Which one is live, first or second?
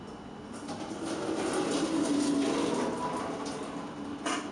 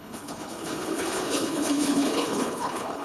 first